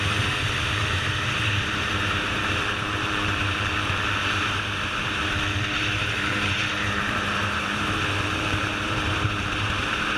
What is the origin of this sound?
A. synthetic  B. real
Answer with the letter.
A